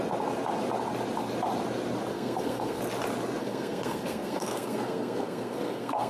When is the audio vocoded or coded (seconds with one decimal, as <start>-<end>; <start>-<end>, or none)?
2.1-2.8; 3.4-6.1